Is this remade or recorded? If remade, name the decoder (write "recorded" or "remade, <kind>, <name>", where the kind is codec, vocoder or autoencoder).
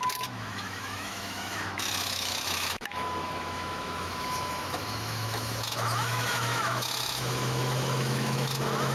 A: remade, autoencoder, DAC-VAE